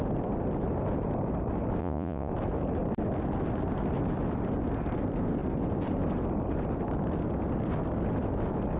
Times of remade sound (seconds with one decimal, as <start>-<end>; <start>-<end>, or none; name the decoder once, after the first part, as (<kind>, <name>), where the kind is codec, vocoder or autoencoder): 1.8-2.3 (vocoder, Vocos)